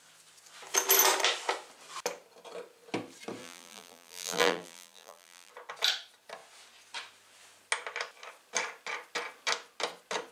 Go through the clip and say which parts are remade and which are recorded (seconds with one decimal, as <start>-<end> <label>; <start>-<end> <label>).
0.0-3.4 recorded; 3.4-5.5 remade; 5.5-10.3 recorded